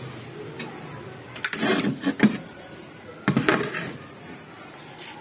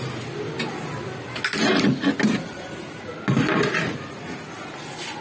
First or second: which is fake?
first